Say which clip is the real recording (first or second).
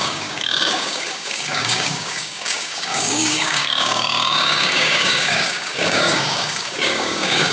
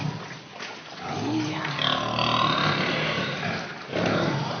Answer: second